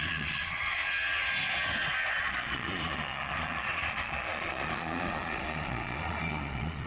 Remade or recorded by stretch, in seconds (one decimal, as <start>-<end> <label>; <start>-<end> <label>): 0.0-0.8 remade; 0.8-2.1 recorded; 2.1-6.9 remade